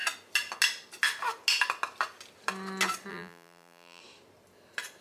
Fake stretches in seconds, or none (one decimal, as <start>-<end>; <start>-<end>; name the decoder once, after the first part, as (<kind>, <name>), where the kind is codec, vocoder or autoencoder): 3.1-4.0 (vocoder, BigVGAN v2)